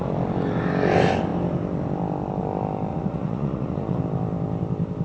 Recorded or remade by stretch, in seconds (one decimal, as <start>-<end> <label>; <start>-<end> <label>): 0.0-2.9 recorded; 2.9-4.0 remade; 4.0-5.0 recorded